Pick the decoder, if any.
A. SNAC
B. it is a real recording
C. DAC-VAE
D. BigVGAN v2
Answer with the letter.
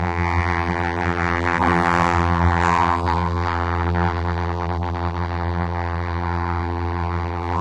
D